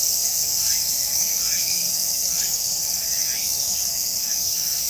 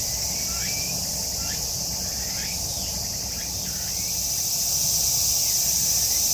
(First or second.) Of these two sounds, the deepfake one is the first